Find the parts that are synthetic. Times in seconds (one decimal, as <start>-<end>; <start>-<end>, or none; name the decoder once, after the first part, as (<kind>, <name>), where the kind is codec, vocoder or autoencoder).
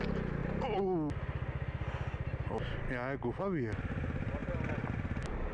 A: none